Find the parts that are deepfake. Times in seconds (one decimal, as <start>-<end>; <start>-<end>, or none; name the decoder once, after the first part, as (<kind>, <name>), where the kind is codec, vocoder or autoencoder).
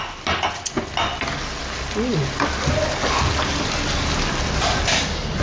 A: none